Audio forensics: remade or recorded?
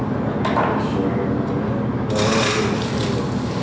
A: recorded